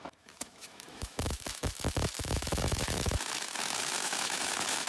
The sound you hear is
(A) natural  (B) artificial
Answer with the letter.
B